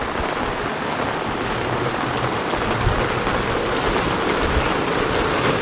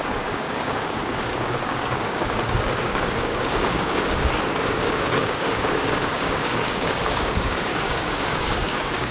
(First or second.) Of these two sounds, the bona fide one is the first